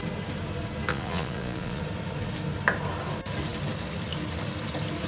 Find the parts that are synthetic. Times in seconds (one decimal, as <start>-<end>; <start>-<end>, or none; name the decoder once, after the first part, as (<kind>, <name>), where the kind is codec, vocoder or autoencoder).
0.9-1.8 (vocoder, Vocos)